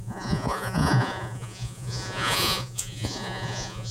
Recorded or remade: remade